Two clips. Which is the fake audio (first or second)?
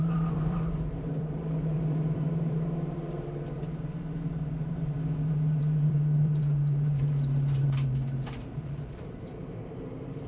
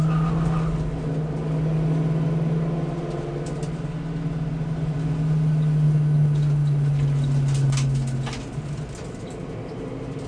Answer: first